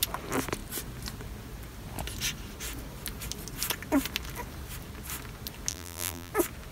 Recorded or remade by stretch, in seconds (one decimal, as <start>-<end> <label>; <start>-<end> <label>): 0.0-5.7 recorded; 5.7-6.3 remade; 6.3-6.7 recorded